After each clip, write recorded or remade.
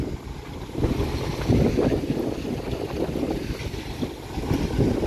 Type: recorded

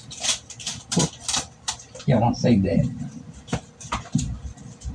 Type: remade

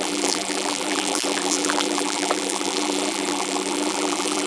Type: remade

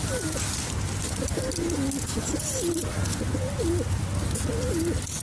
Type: recorded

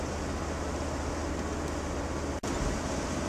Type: recorded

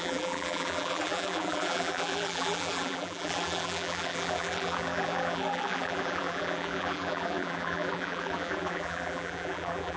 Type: remade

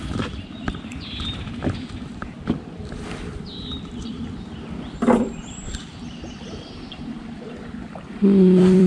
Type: remade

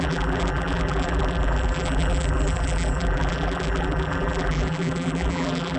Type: remade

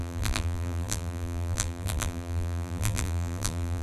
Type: remade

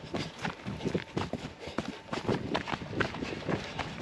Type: recorded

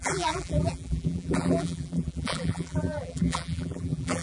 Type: remade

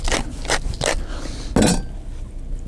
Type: recorded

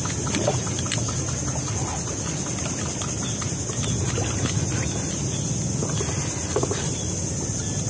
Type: recorded